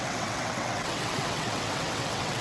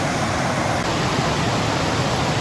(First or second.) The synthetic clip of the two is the first